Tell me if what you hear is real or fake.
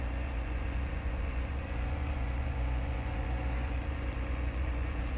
fake